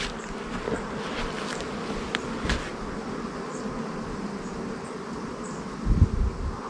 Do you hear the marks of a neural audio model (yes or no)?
no